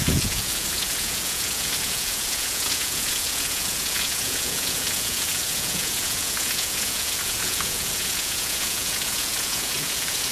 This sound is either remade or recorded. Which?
remade